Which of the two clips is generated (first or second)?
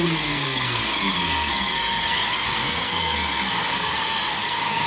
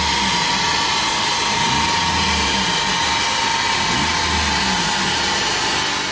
first